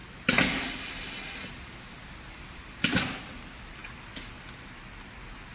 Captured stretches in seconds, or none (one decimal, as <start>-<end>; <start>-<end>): 0.0-5.5

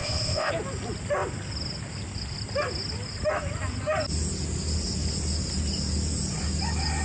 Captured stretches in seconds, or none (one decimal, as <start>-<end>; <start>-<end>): 0.5-7.0

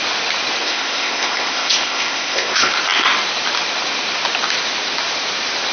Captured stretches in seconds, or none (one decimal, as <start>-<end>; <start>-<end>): 0.0-0.6; 2.7-5.7